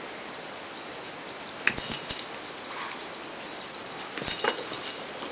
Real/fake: real